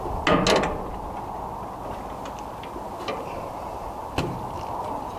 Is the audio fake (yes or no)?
no